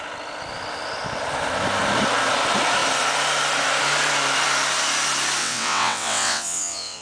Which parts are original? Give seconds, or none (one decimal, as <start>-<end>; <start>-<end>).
0.0-5.4